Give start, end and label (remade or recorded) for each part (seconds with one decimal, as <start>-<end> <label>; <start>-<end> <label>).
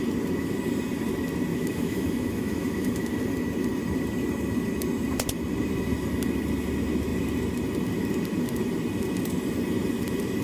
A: 0.0-1.5 recorded; 1.5-3.1 remade; 3.1-10.4 recorded